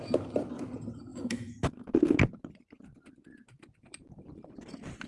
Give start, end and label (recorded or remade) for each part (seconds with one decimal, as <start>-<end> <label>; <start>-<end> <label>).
0.0-1.1 recorded; 1.1-2.2 remade; 2.2-5.1 recorded